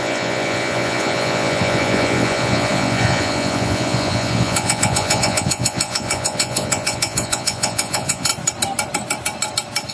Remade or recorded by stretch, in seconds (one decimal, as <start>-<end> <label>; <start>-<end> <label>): 0.0-8.3 remade; 8.3-9.9 recorded